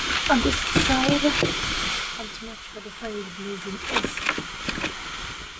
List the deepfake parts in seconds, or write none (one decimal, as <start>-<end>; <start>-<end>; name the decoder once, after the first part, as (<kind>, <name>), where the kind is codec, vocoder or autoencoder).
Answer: 2.7-3.3 (codec, DAC)